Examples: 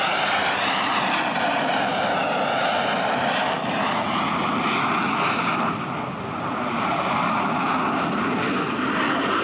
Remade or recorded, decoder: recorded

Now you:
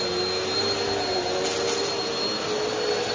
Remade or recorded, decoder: recorded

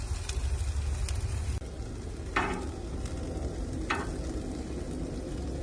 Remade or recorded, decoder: recorded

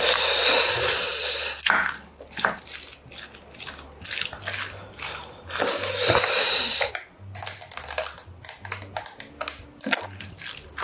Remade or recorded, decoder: recorded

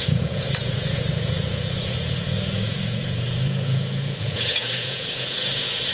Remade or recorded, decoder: remade, vocoder, Vocos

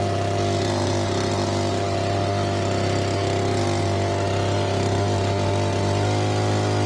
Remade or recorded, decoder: recorded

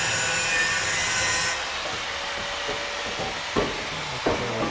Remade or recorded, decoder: recorded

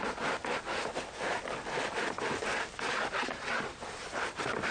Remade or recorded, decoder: recorded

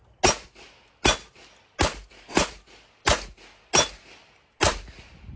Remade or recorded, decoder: recorded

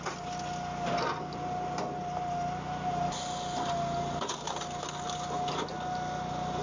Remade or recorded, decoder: recorded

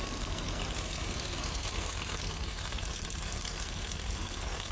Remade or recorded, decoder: remade, codec, SNAC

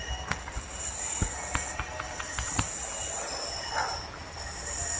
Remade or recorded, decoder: recorded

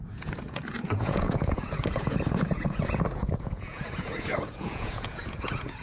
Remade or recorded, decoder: remade, vocoder, Vocos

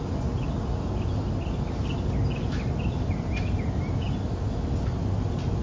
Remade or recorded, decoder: recorded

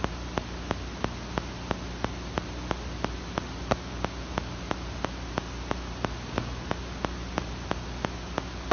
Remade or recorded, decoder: recorded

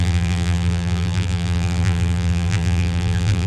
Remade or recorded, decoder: remade, vocoder, BigVGAN v2